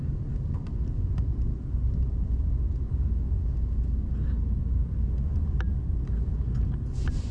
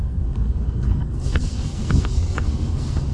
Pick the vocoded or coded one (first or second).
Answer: second